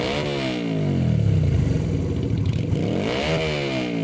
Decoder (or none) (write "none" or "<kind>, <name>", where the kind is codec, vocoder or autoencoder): none